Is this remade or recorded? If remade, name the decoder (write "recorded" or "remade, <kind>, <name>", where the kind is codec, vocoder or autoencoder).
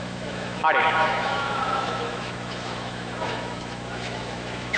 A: remade, autoencoder, DAC-VAE